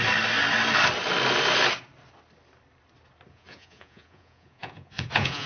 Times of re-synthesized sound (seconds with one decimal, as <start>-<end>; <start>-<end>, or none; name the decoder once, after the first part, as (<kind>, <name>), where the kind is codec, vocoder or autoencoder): 3.3-5.5 (vocoder, Vocos)